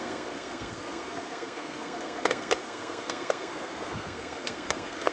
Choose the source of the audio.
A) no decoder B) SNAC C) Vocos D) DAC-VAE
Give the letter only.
B